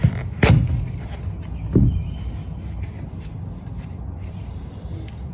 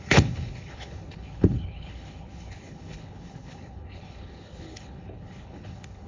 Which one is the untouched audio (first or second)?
first